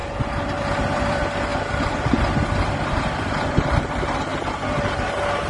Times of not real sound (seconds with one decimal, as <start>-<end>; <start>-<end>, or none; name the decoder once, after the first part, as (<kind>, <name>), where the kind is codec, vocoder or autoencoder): 0.6-1.5 (vocoder, BigVGAN v2); 3.5-4.3